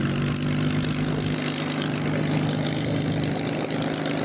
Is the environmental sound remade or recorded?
recorded